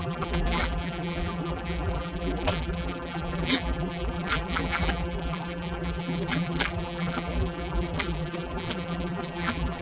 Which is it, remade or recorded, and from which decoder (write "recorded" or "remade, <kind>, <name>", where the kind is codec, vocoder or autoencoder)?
remade, vocoder, BigVGAN v2